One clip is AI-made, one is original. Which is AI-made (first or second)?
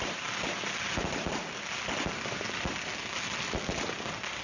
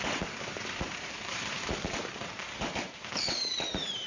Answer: second